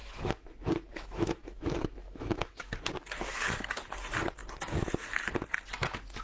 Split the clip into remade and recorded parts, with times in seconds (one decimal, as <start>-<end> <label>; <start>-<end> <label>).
0.0-2.9 remade; 2.9-6.2 recorded

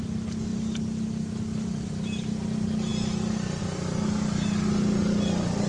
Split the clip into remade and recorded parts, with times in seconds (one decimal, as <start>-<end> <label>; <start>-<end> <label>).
0.0-5.7 recorded

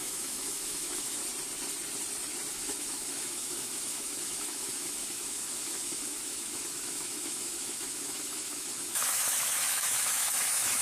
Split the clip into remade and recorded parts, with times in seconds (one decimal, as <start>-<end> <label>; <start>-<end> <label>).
0.0-1.2 remade; 1.2-2.5 recorded; 2.5-10.8 remade

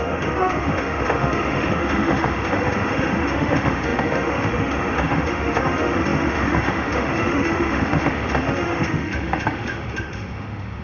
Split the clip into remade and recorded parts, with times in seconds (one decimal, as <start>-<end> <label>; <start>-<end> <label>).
0.0-10.8 remade

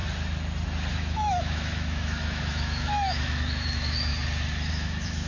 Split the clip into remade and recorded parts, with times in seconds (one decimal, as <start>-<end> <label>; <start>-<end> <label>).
0.0-0.9 recorded; 0.9-4.1 remade; 4.1-4.7 recorded; 4.7-5.3 remade